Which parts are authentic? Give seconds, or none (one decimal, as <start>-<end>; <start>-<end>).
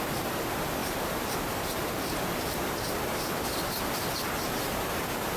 0.0-0.8; 4.0-5.4